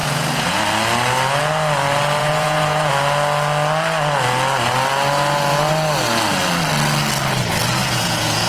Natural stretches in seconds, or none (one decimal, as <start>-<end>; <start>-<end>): 0.6-2.2; 2.9-7.8